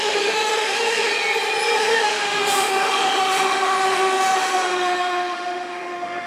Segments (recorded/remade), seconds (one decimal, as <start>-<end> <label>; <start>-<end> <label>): 0.0-1.1 remade; 1.1-1.8 recorded; 1.8-6.3 remade